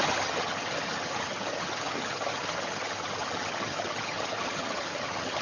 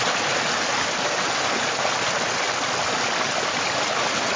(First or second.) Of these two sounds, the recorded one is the second